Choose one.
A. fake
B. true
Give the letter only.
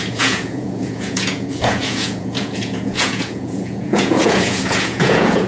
A